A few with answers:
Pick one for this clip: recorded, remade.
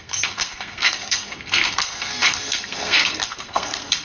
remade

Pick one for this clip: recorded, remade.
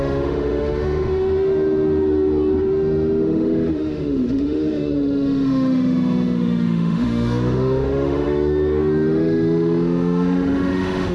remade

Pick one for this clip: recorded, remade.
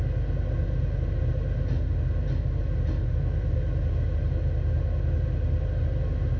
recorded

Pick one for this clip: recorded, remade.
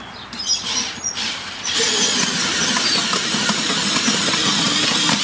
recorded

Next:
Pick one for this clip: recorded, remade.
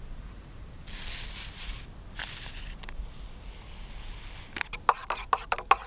recorded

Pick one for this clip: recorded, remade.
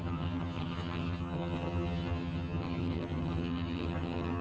remade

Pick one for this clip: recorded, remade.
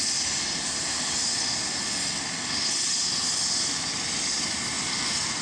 recorded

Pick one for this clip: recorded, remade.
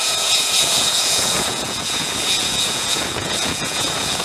remade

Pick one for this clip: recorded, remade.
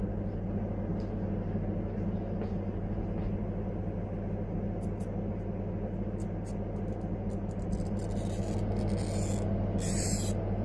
recorded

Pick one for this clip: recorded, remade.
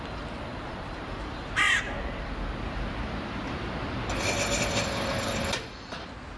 recorded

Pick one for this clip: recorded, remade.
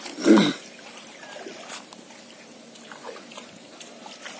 remade